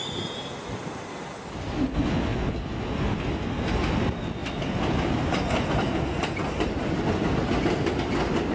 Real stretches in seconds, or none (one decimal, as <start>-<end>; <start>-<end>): 0.0-8.5